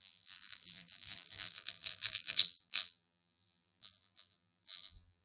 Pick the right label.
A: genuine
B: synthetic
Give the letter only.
B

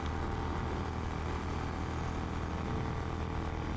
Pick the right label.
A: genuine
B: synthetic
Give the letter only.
A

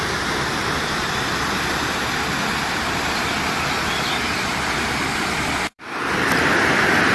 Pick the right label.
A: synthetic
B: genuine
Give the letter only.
A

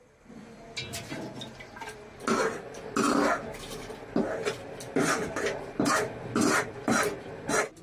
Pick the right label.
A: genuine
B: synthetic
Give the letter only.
A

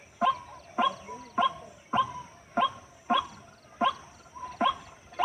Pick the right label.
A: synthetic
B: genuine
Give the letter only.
B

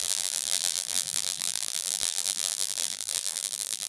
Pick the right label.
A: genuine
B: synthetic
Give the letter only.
B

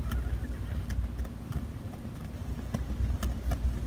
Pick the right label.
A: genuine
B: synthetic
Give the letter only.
A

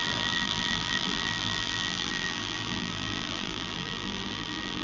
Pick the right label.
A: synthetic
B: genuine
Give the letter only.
A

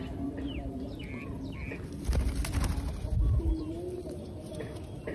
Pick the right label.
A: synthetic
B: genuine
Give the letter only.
B